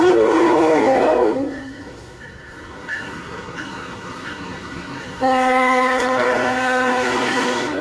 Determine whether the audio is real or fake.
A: fake